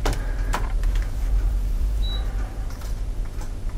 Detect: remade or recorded remade